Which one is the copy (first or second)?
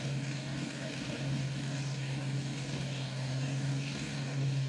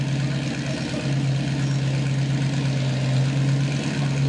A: first